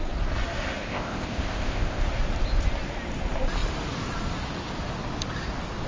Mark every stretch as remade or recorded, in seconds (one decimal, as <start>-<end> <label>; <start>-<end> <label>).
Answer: 0.0-0.8 recorded; 0.8-2.0 remade; 2.0-5.9 recorded